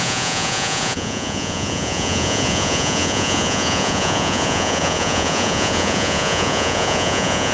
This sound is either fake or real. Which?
fake